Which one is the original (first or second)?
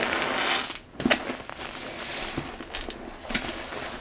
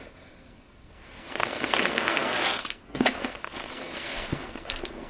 first